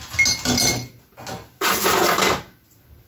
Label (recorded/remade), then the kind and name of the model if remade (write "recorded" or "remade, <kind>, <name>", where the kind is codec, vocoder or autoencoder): recorded